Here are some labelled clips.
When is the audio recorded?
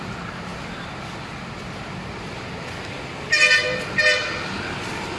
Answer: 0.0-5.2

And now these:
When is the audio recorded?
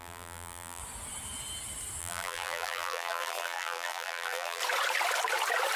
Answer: 0.8-2.0; 4.6-5.8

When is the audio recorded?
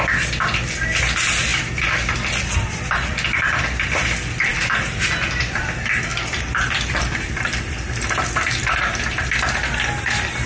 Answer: 0.0-1.5; 4.0-6.1; 8.7-10.5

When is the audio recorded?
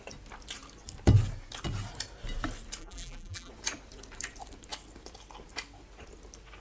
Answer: 0.0-2.8; 3.5-6.6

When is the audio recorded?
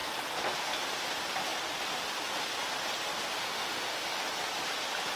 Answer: 0.0-3.4; 4.2-5.2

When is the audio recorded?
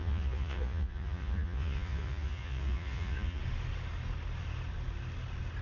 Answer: 3.4-5.6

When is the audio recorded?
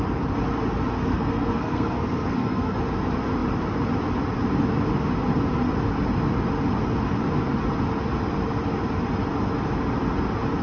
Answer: 0.0-1.0; 2.8-10.6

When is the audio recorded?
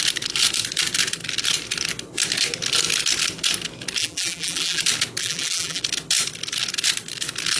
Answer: 0.0-4.0; 4.8-5.2; 5.8-7.6